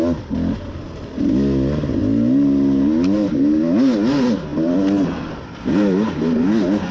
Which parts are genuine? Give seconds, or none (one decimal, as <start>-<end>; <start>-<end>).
0.0-6.9